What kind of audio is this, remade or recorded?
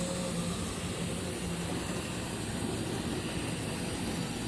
recorded